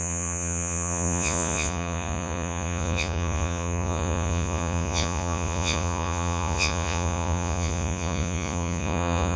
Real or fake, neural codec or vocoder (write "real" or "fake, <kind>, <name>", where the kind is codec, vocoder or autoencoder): fake, vocoder, Vocos